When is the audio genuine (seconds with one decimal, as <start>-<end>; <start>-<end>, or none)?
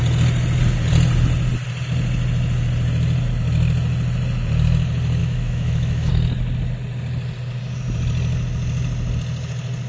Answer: 0.0-5.2; 6.1-9.9